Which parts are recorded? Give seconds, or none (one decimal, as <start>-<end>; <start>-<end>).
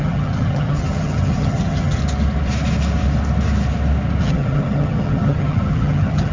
2.0-4.2